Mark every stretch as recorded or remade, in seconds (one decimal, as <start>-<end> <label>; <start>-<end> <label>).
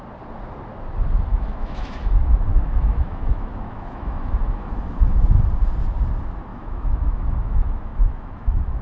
0.0-1.3 recorded; 1.3-5.4 remade; 5.4-6.5 recorded; 6.5-8.8 remade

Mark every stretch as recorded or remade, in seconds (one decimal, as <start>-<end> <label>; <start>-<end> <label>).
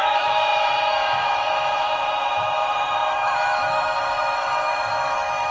0.0-5.5 remade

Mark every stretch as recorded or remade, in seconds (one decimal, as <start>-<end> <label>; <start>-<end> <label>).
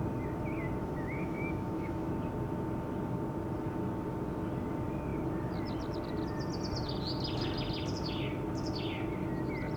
0.0-0.8 recorded; 0.8-2.1 remade; 2.1-9.8 recorded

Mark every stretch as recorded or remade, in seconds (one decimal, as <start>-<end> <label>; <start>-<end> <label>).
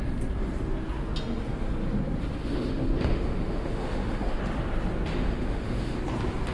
0.0-2.4 recorded; 2.4-4.4 remade; 4.4-5.1 recorded; 5.1-6.0 remade; 6.0-6.5 recorded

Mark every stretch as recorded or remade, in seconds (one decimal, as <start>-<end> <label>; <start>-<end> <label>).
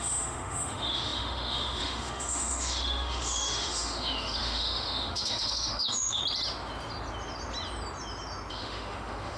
0.0-6.2 remade; 6.2-8.5 recorded; 8.5-9.4 remade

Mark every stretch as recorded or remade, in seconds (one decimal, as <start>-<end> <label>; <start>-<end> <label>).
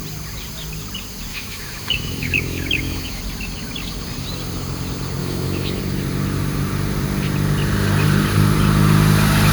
0.0-1.3 recorded; 1.3-3.2 remade; 3.2-5.2 recorded; 5.2-5.8 remade; 5.8-9.5 recorded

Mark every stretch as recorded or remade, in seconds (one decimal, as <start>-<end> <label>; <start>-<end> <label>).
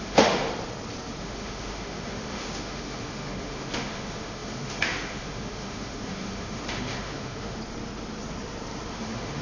0.0-0.5 remade; 0.5-1.2 recorded; 1.2-7.6 remade; 7.6-8.9 recorded; 8.9-9.4 remade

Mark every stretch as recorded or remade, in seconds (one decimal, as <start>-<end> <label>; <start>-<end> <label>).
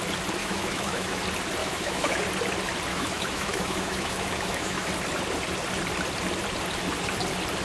0.0-0.4 recorded; 0.4-1.2 remade; 1.2-1.6 recorded; 1.6-2.2 remade; 2.2-2.9 recorded; 2.9-4.9 remade; 4.9-7.6 recorded